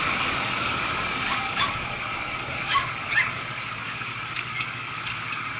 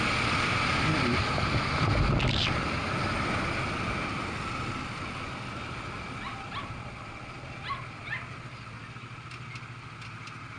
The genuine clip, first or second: second